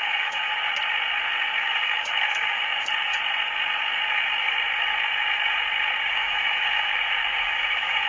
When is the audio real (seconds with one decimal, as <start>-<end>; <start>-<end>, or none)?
0.5-1.6; 2.6-6.1; 6.9-7.4